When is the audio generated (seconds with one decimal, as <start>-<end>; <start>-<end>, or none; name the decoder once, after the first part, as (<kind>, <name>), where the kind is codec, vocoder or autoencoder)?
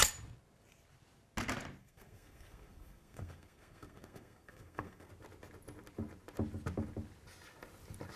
1.8-5.1 (codec, SNAC)